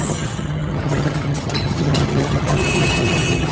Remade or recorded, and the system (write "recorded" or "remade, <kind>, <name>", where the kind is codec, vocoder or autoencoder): remade, vocoder, HiFi-GAN